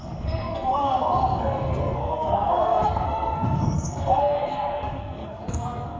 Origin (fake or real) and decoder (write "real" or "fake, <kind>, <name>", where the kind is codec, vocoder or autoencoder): fake, codec, SNAC